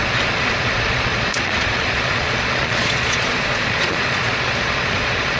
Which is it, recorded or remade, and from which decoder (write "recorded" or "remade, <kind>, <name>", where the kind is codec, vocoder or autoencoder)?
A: remade, vocoder, Vocos